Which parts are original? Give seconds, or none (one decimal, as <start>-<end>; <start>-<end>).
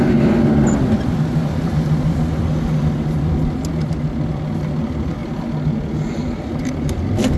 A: 0.0-7.4